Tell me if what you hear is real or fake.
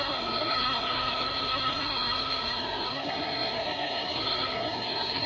fake